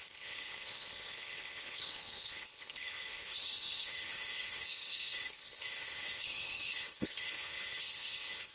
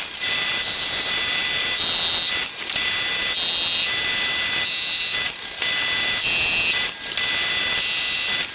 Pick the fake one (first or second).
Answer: first